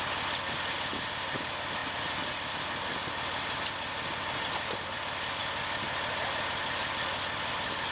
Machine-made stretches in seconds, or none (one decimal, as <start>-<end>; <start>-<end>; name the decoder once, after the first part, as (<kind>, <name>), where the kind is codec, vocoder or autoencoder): 1.8-2.5 (vocoder, BigVGAN v2)